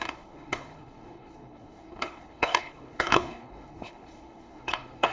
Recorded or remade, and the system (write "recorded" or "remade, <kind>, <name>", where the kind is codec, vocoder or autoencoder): remade, codec, HILCodec